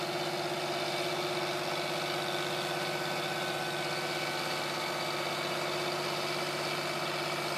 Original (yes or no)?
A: yes